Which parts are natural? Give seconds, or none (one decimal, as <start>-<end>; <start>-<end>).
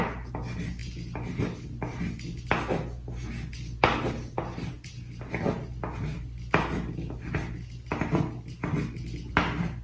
0.0-9.8